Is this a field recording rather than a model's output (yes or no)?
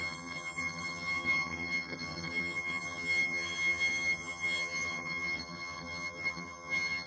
no